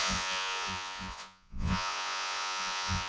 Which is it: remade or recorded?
remade